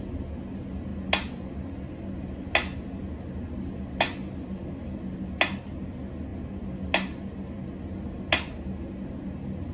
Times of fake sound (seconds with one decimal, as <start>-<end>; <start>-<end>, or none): none